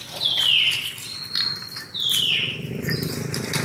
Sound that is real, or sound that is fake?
real